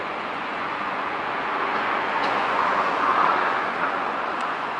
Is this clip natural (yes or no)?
no